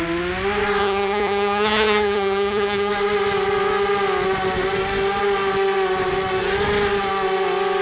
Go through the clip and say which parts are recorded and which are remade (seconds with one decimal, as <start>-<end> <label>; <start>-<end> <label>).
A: 0.0-0.8 recorded; 0.8-2.9 remade; 2.9-7.8 recorded

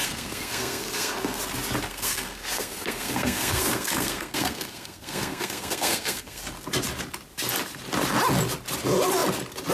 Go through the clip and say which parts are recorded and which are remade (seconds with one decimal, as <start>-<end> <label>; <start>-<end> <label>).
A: 0.0-1.4 remade; 1.4-1.9 recorded; 1.9-6.4 remade; 6.4-9.7 recorded